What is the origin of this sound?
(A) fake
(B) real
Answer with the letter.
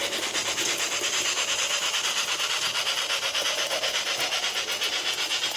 B